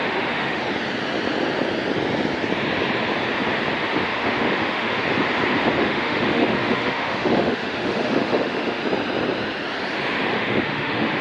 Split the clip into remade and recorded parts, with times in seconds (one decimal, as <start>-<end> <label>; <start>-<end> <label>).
0.0-0.6 remade; 0.6-4.2 recorded; 4.2-5.0 remade; 5.0-5.8 recorded; 5.8-8.8 remade; 8.8-10.3 recorded; 10.3-11.2 remade